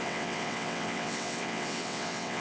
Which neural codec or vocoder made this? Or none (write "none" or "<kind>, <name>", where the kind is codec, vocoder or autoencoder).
vocoder, WaveNeXt